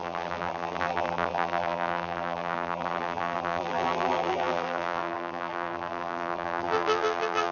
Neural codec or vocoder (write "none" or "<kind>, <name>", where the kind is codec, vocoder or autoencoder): vocoder, BigVGAN v2